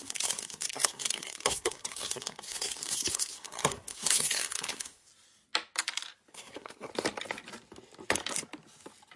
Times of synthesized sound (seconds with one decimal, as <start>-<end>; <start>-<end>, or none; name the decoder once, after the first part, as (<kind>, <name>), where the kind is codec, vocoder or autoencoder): 0.0-5.1 (codec, SNAC); 6.3-6.9

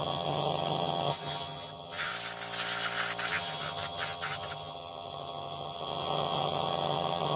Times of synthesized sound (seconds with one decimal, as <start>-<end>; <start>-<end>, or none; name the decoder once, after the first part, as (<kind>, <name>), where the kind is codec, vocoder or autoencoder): 0.0-2.1 (vocoder, HiFi-GAN); 3.3-7.4

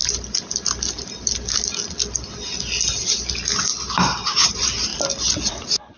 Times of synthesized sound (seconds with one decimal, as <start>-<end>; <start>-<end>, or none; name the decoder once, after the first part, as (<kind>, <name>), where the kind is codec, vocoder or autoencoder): 3.6-4.9 (vocoder, BigVGAN v2); 5.5-6.0

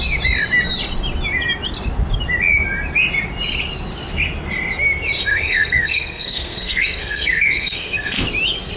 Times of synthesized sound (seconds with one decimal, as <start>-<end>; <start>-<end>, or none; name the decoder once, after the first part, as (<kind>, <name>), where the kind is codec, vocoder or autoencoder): 5.3-8.2 (codec, SNAC)

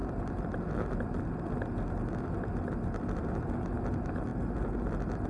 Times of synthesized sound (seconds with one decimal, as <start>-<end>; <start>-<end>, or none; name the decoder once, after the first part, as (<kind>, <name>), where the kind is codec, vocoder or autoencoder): none